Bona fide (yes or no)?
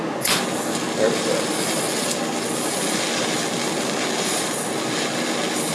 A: yes